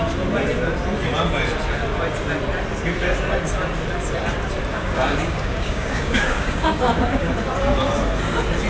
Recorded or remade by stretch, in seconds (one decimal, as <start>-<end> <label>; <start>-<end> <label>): 0.0-4.7 recorded; 4.7-7.3 remade; 7.3-8.7 recorded